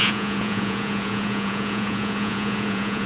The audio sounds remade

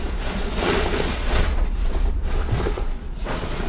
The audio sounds remade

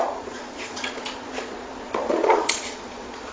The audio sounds remade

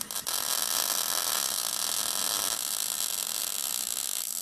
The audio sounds recorded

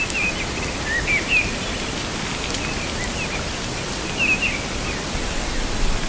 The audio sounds recorded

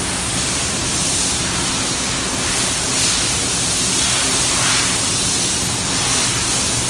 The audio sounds recorded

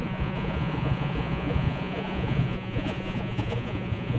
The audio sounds remade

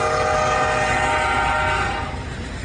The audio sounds recorded